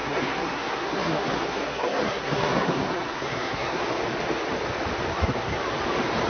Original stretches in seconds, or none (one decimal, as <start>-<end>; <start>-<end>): 3.8-5.1; 5.6-6.3